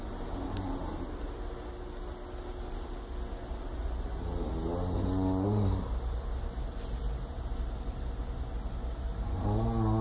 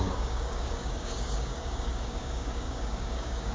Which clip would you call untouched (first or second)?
first